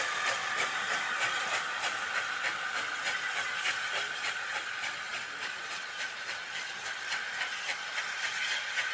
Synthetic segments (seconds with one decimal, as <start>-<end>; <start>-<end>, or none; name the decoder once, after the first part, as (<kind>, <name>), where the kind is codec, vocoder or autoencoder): none